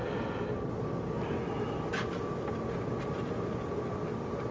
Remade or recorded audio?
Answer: recorded